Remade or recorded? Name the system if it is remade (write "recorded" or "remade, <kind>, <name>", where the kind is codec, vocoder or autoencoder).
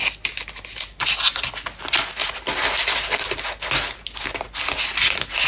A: recorded